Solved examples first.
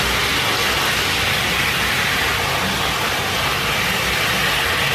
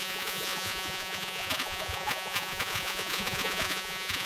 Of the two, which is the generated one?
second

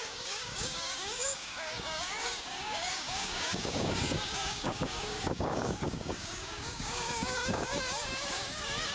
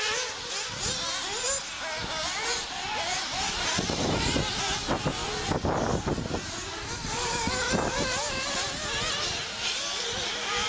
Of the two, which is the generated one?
first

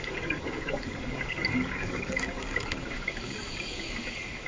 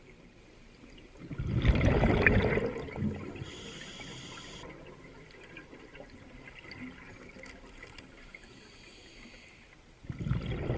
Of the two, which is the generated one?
first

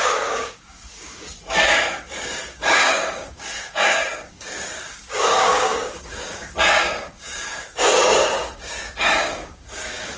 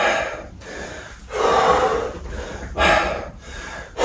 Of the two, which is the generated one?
first